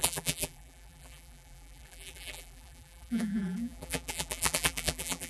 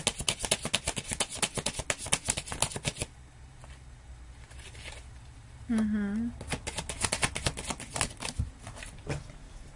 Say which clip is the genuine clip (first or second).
second